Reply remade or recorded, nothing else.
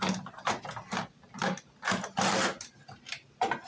recorded